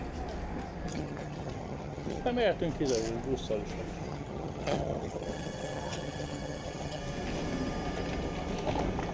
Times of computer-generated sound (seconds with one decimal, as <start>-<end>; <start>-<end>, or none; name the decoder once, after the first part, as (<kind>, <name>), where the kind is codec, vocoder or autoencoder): 0.9-2.2 (vocoder, HiFi-GAN); 4.0-7.0

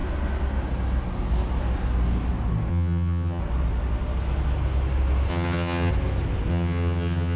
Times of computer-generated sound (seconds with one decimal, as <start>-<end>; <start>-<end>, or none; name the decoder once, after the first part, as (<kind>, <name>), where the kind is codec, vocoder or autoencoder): 2.7-3.4 (vocoder, HiFi-GAN); 5.3-5.9; 6.5-7.4

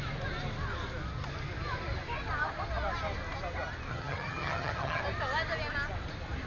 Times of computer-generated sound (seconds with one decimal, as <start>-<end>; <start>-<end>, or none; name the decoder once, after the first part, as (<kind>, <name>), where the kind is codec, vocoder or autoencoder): 3.9-5.0 (vocoder, HiFi-GAN)